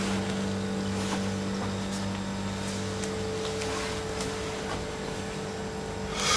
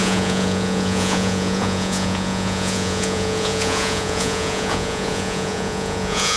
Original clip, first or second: first